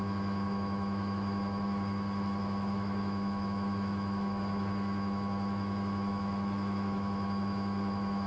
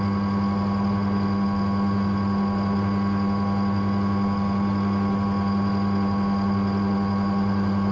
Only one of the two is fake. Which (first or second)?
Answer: first